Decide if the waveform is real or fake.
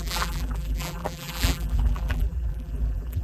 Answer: fake